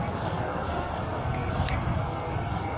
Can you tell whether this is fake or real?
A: fake